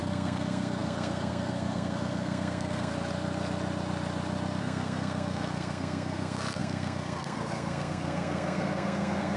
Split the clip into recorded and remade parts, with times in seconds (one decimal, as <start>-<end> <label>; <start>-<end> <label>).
0.0-2.9 remade; 2.9-4.6 recorded; 4.6-9.4 remade